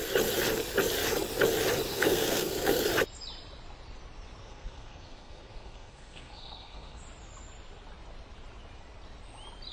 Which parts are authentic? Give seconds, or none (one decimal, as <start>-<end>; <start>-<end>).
0.0-1.9; 2.8-4.4; 7.0-9.7

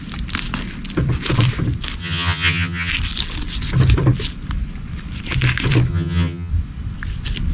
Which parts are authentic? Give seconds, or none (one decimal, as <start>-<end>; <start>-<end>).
0.0-2.0; 2.9-5.9; 6.5-7.5

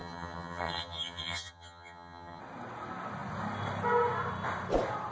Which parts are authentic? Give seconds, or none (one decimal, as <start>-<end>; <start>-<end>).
2.4-5.1